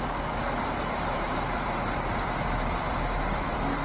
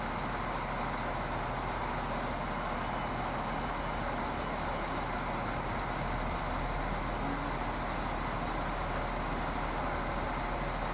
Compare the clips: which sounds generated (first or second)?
first